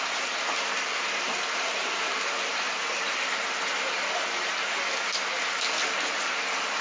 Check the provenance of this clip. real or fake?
real